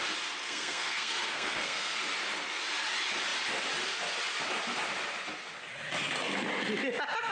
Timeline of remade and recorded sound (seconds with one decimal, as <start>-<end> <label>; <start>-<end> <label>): 0.0-0.4 recorded; 0.4-2.0 remade; 2.0-7.3 recorded